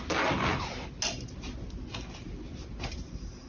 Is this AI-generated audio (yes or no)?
no